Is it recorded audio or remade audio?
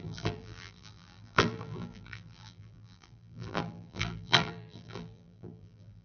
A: remade